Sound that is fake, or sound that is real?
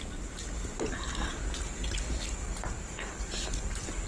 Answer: real